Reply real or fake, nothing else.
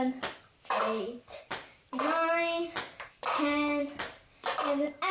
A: real